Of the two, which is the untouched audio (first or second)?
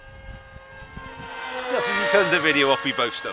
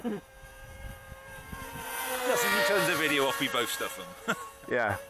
first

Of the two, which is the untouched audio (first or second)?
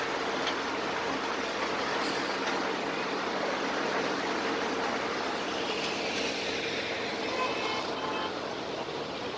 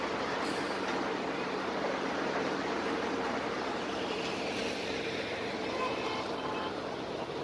first